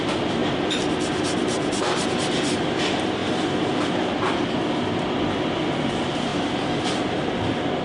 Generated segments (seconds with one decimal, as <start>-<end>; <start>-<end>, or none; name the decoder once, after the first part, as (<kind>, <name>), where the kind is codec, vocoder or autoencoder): 0.0-0.4 (vocoder, BigVGAN v2); 0.9-6.3; 7.0-7.8